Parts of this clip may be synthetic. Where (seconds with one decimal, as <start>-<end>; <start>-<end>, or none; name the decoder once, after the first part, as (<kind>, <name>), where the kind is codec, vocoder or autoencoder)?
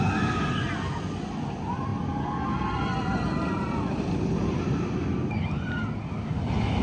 none